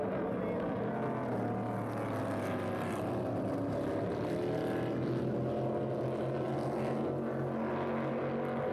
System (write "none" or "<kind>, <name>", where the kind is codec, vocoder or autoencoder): none